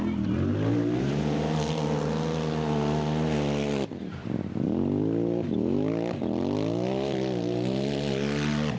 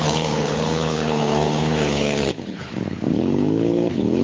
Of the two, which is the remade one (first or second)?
second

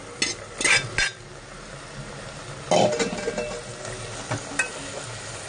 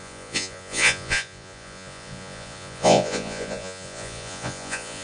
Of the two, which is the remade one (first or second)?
second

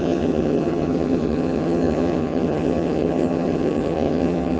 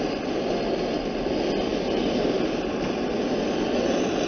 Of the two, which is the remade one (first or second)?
first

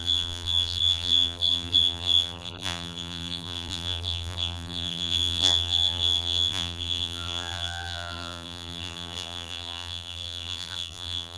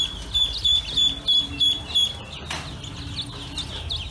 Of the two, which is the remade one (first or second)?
first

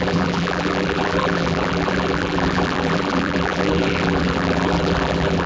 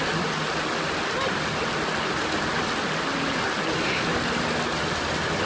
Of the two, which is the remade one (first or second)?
first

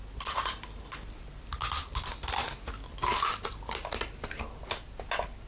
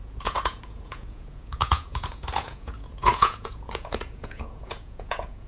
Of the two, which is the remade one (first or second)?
second